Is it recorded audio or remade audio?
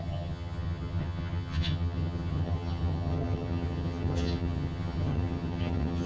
remade